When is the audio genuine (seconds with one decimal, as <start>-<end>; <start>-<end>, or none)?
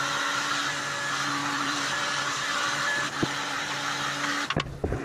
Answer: 0.0-1.4; 3.7-5.0